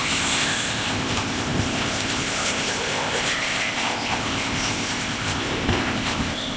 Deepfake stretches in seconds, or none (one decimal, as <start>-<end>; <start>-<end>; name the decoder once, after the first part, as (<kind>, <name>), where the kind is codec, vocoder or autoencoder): 0.0-6.6 (codec, ZipCodec)